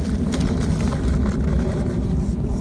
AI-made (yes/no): no